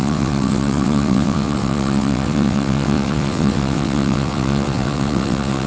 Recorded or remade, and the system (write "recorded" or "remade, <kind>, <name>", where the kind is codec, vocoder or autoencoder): remade, vocoder, WaveNeXt